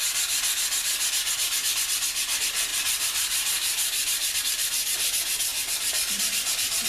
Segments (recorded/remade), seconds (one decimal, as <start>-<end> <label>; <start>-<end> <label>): 0.0-2.7 recorded; 2.7-4.4 remade; 4.4-5.5 recorded; 5.5-6.1 remade; 6.1-6.9 recorded